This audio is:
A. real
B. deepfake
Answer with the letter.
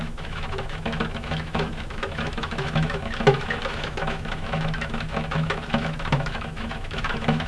B